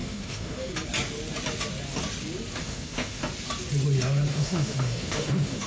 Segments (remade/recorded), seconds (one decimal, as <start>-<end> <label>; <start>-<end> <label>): 0.0-0.7 remade; 0.7-2.6 recorded; 2.6-3.2 remade; 3.2-4.3 recorded; 4.3-5.7 remade